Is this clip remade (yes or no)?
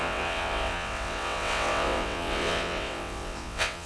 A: yes